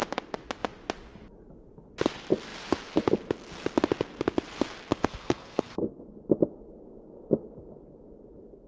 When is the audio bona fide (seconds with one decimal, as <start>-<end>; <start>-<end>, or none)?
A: 0.0-4.9; 6.0-8.7